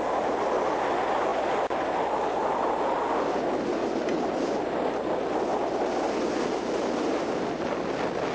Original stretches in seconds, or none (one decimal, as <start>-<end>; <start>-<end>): 0.0-8.3